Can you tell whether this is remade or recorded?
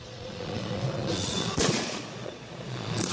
remade